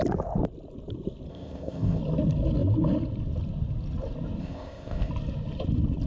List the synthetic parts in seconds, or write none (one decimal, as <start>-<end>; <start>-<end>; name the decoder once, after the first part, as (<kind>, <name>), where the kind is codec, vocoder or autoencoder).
1.3-2.0 (codec, ZipCodec); 4.4-5.1